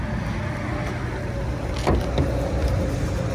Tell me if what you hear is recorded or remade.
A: recorded